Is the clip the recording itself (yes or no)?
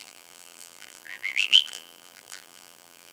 no